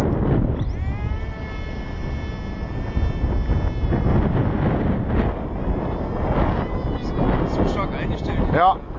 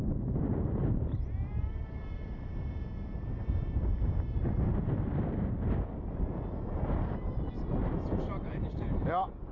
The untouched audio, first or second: first